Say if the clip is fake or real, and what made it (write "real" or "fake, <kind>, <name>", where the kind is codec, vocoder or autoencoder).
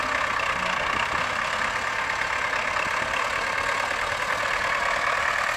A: real